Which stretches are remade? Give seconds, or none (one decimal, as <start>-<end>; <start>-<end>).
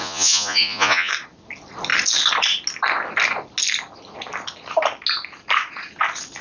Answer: 0.0-1.1